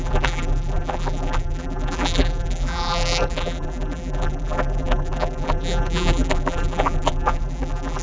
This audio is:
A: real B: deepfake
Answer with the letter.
B